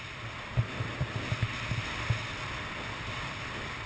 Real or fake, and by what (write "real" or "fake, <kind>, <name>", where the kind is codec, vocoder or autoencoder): real